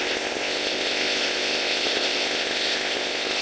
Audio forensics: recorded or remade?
remade